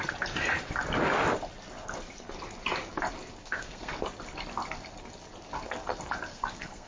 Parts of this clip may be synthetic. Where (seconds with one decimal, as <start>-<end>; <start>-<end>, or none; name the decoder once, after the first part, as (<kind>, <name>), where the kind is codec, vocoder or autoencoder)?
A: 3.4-3.9 (codec, SNAC); 6.3-6.9